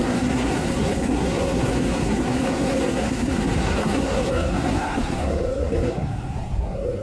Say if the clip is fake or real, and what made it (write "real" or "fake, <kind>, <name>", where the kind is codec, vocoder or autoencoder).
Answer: fake, codec, SNAC